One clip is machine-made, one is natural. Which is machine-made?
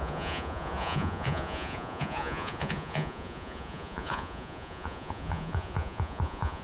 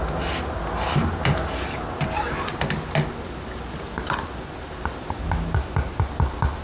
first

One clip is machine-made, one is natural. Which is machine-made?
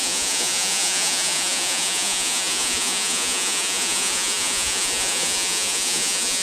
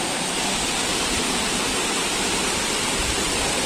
first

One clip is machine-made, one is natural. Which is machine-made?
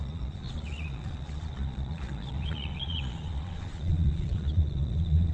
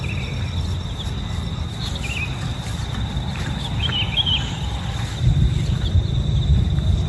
first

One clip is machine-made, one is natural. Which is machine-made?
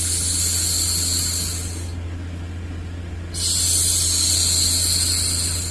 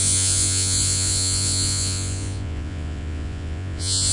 second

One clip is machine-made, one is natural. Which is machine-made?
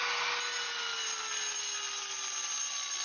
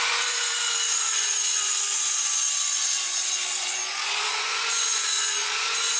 second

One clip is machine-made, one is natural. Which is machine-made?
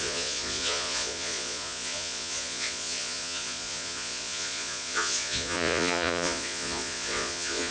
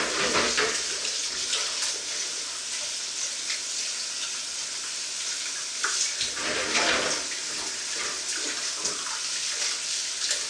first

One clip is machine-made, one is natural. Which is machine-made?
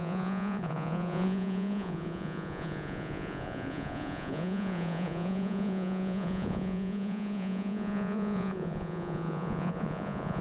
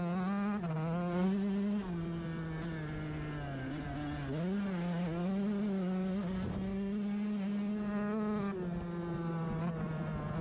first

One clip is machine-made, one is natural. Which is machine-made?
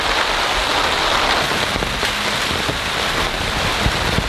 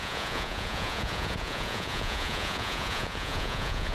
second